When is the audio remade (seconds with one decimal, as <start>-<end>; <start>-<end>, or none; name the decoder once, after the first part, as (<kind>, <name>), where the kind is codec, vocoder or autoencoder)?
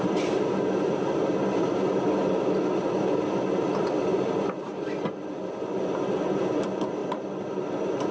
none